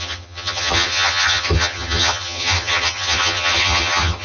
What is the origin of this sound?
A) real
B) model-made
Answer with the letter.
B